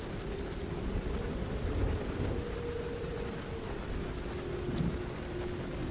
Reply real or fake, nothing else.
real